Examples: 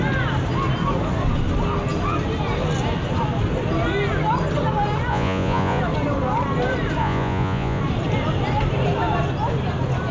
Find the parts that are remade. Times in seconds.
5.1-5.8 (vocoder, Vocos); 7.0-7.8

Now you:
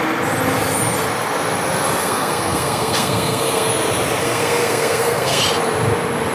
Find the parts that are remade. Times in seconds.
2.0-3.7 (codec, SNAC); 4.2-5.4

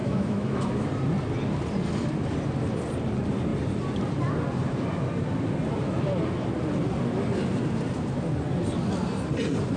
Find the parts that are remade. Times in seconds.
0.0-0.9 (autoencoder, DAC-VAE)

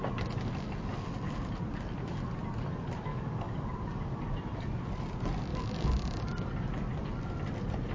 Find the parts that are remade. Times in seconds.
3.1-4.3 (codec, DAC)

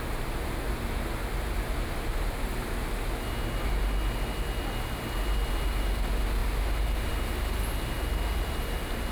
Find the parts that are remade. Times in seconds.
none

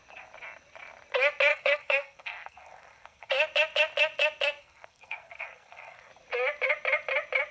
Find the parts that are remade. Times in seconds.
1.5-3.3 (codec, SNAC); 4.6-6.1